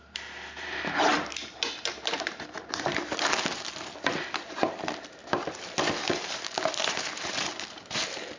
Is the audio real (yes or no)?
no